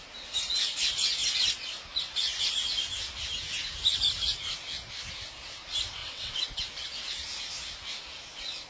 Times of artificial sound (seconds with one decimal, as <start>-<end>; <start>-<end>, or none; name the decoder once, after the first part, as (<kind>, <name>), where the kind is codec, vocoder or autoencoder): 6.0-6.6 (vocoder, WaveNeXt)